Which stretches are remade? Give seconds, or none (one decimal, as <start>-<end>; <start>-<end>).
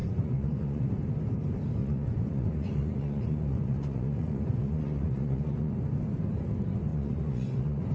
0.0-0.9; 1.8-5.7; 6.9-7.9